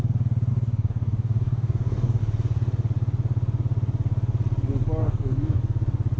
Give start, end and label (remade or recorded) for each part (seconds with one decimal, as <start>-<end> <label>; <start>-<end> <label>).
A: 0.0-0.5 recorded; 0.5-2.2 remade; 2.2-5.0 recorded; 5.0-5.6 remade; 5.6-6.2 recorded

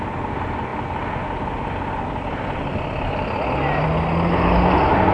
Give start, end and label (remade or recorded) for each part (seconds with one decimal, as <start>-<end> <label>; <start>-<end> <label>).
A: 0.0-5.1 recorded

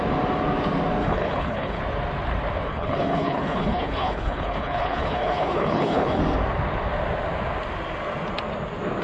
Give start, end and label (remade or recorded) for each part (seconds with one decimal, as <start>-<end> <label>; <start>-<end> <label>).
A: 0.0-1.0 recorded; 1.0-1.8 remade; 1.8-2.7 recorded; 2.7-6.2 remade; 6.2-9.0 recorded

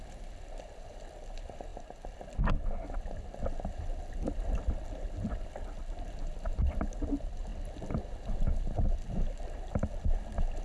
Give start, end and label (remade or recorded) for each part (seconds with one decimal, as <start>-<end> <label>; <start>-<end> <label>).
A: 0.0-1.7 remade; 1.7-3.4 recorded; 3.4-10.6 remade

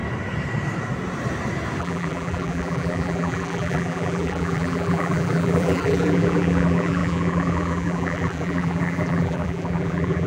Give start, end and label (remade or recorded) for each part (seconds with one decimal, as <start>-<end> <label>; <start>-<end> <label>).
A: 0.0-1.8 recorded; 1.8-10.3 remade

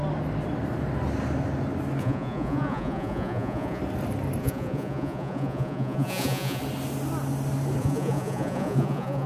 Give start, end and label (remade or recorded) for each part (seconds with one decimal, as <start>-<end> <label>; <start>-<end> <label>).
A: 0.0-2.0 recorded; 2.0-3.8 remade; 3.8-4.4 recorded; 4.4-6.6 remade; 6.6-7.8 recorded; 7.8-9.3 remade